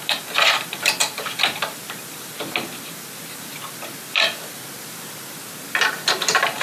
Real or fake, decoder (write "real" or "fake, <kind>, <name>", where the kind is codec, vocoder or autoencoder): fake, vocoder, BigVGAN v2